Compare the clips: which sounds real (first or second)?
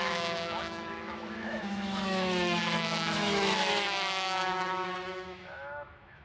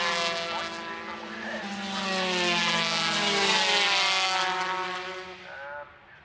second